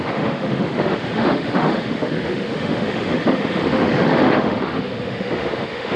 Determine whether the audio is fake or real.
fake